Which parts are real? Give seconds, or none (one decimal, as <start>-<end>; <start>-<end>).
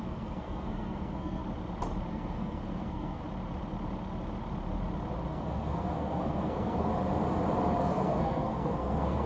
1.4-2.1; 3.2-5.3; 6.9-7.8